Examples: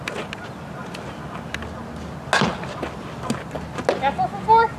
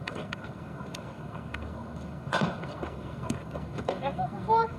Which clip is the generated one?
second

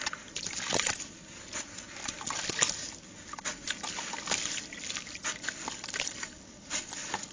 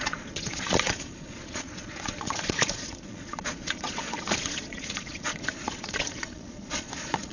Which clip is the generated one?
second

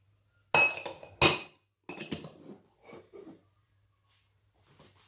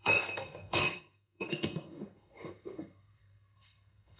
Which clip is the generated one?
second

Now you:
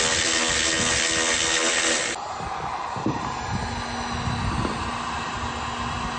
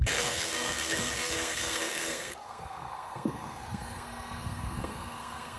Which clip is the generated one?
second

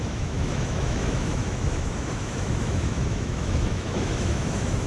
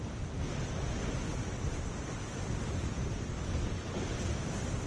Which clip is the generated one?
first